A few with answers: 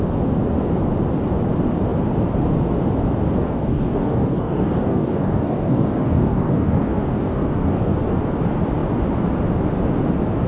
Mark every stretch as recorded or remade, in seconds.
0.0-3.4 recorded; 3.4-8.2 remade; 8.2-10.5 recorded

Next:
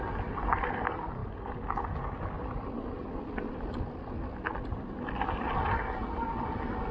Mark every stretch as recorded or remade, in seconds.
0.0-6.9 recorded

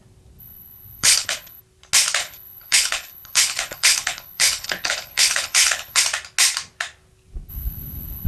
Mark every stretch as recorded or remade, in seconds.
0.0-0.4 recorded; 0.4-1.6 remade; 1.6-2.2 recorded; 2.2-6.0 remade; 6.0-7.5 recorded; 7.5-8.3 remade

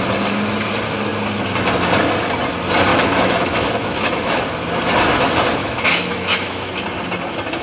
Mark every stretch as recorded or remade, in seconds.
0.0-2.9 recorded; 2.9-4.4 remade; 4.4-5.6 recorded; 5.6-6.7 remade; 6.7-7.6 recorded